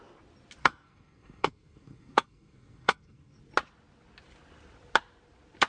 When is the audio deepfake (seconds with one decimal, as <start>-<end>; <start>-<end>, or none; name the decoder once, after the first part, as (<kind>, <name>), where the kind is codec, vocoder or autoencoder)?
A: 0.6-3.4 (codec, SNAC)